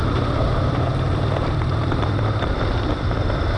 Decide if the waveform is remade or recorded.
remade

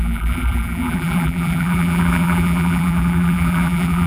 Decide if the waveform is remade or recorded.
remade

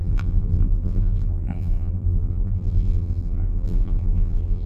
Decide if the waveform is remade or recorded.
remade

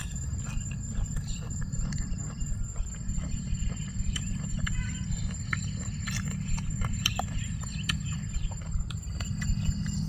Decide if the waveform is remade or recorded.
remade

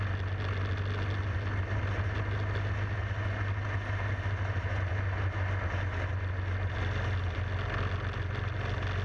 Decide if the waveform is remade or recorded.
recorded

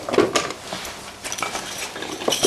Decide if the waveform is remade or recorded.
recorded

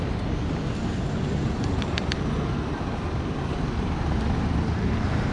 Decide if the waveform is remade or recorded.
recorded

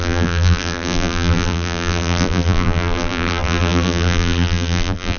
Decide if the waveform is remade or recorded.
remade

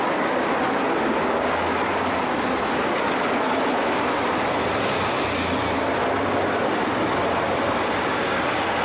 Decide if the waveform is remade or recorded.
recorded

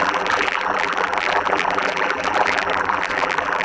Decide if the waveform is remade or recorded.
remade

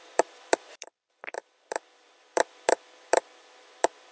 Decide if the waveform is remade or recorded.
remade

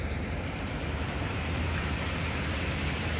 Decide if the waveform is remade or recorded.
remade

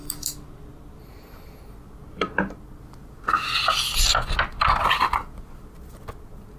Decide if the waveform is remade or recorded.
recorded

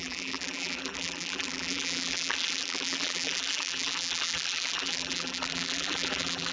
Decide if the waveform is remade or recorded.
remade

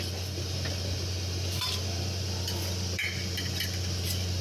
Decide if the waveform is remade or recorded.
remade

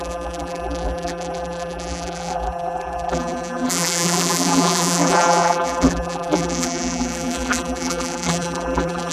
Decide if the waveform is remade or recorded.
remade